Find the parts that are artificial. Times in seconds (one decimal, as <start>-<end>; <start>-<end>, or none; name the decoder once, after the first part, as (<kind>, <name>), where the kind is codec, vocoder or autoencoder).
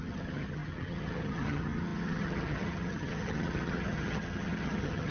0.0-5.1 (vocoder, HiFi-GAN)